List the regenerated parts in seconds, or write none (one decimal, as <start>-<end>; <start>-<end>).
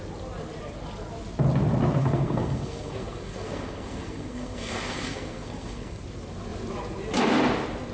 2.0-6.0